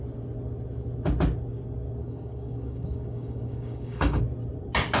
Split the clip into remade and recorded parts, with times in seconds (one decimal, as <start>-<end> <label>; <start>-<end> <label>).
0.0-2.0 recorded; 2.0-4.2 remade; 4.2-5.0 recorded

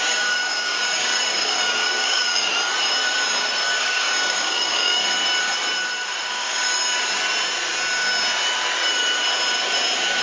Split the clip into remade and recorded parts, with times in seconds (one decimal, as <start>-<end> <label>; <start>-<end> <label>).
0.0-2.5 remade; 2.5-3.8 recorded; 3.8-5.0 remade; 5.0-6.3 recorded; 6.3-6.8 remade; 6.8-10.2 recorded

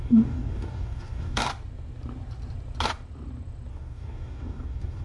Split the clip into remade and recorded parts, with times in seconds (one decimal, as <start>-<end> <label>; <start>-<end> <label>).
0.0-1.5 remade; 1.5-3.7 recorded; 3.7-5.0 remade

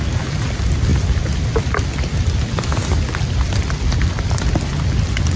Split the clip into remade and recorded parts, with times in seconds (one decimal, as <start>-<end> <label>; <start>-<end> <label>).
0.0-5.4 recorded

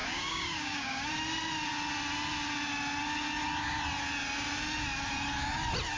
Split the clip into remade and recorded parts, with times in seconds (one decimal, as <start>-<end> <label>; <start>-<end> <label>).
0.0-1.1 remade; 1.1-6.0 recorded

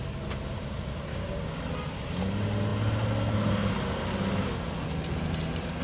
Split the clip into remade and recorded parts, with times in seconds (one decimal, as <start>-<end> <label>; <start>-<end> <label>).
0.0-1.1 recorded; 1.1-1.6 remade; 1.6-5.8 recorded

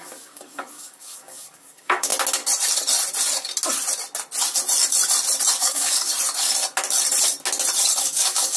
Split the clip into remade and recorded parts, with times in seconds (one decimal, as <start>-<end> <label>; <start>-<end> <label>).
0.0-2.1 remade; 2.1-5.6 recorded; 5.6-6.1 remade; 6.1-8.0 recorded; 8.0-8.6 remade

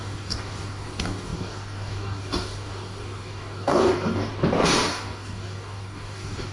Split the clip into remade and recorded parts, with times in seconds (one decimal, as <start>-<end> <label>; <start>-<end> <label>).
0.0-4.3 remade; 4.3-4.9 recorded; 4.9-6.5 remade